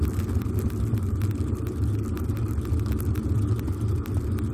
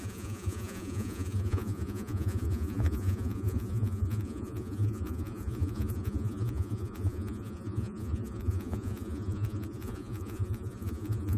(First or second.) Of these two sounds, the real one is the first